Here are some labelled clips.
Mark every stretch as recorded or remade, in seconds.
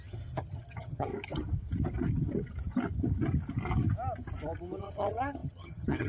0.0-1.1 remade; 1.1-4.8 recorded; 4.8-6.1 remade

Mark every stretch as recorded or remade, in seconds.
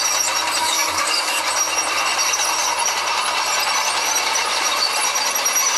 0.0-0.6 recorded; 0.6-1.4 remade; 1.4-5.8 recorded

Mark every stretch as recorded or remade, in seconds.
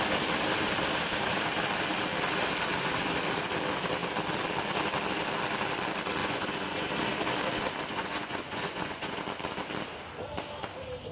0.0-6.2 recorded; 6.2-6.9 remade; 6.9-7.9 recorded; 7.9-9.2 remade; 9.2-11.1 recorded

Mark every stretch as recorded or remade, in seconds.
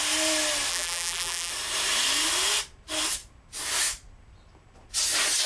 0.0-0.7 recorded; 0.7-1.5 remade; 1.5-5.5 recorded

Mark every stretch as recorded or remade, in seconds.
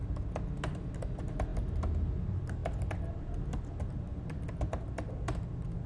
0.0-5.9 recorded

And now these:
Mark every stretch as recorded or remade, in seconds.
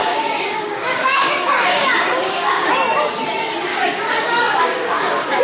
0.0-2.7 remade; 2.7-3.7 recorded; 3.7-5.4 remade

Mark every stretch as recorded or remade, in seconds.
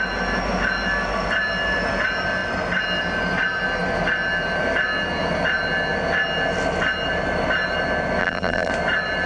0.0-8.2 recorded; 8.2-8.7 remade; 8.7-9.3 recorded